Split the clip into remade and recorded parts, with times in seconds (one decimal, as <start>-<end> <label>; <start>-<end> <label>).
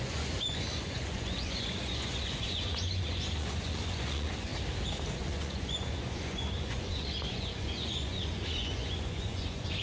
0.0-4.5 remade; 4.5-5.1 recorded; 5.1-9.8 remade